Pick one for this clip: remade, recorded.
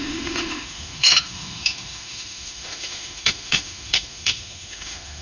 remade